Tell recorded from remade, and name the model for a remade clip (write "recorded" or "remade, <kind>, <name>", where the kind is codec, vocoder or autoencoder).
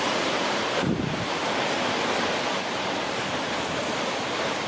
remade, vocoder, BigVGAN v2